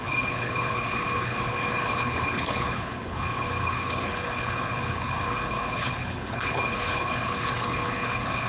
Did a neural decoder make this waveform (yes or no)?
yes